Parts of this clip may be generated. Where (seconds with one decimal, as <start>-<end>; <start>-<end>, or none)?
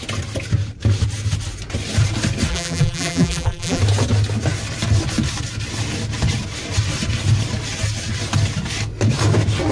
2.5-3.8